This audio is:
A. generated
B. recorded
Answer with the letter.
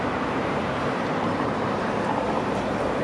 A